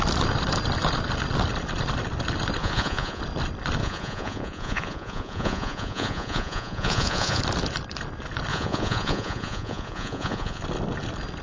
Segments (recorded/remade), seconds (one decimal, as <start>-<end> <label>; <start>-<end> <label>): 0.0-2.6 recorded; 2.6-3.2 remade; 3.2-3.8 recorded; 3.8-7.4 remade; 7.4-8.5 recorded; 8.5-10.6 remade; 10.6-11.4 recorded